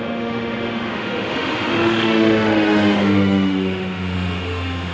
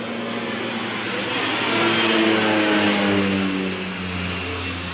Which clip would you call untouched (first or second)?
second